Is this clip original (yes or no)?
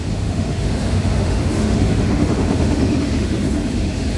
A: no